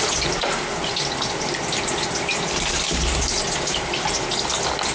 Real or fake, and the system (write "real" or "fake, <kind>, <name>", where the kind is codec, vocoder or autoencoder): real